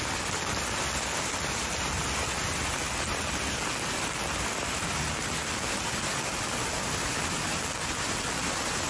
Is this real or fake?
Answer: real